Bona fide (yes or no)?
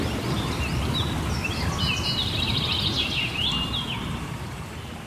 yes